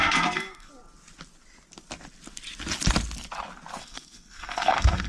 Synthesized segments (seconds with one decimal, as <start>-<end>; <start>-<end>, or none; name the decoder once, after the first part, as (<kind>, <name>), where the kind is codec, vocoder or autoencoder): 0.0-0.7 (codec, SNAC); 3.8-5.1